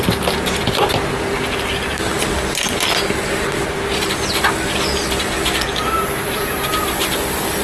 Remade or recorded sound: recorded